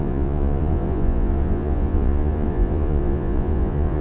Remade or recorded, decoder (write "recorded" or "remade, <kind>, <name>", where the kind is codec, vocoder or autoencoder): remade, vocoder, Vocos